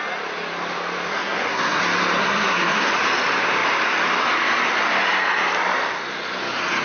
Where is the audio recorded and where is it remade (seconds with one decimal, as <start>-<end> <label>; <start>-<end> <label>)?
0.0-1.1 recorded; 1.1-1.8 remade; 1.8-2.2 recorded; 2.2-2.9 remade; 2.9-6.8 recorded